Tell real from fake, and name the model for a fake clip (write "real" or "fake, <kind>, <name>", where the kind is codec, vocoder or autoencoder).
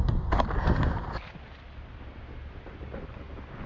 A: real